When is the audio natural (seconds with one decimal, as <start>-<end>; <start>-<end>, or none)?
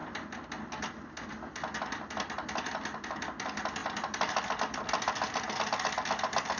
0.0-6.6